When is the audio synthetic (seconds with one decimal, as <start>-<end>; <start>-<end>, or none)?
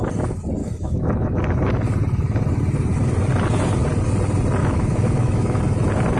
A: 0.6-1.4; 4.6-5.6